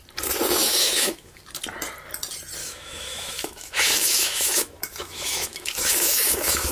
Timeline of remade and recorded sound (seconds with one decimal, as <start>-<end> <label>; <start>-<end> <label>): 0.0-0.6 recorded; 0.6-1.4 remade; 1.4-2.6 recorded; 2.6-6.7 remade